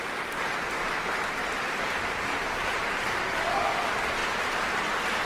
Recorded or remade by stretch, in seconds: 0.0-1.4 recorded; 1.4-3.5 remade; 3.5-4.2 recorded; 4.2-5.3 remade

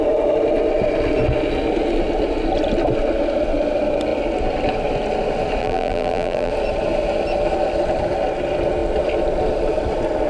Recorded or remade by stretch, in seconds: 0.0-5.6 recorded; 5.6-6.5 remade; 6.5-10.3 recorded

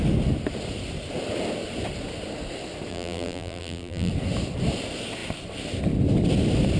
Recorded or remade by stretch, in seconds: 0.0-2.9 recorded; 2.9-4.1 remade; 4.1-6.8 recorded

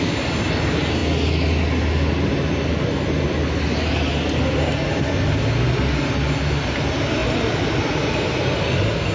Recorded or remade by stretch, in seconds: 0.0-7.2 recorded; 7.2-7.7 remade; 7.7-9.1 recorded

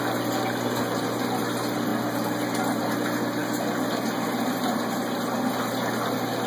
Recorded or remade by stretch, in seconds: 0.0-6.5 recorded

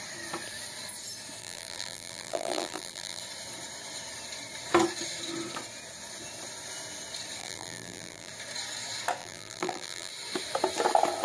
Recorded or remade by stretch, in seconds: 0.0-1.4 recorded; 1.4-3.2 remade; 3.2-7.4 recorded; 7.4-8.3 remade; 8.3-9.2 recorded; 9.2-10.1 remade; 10.1-11.2 recorded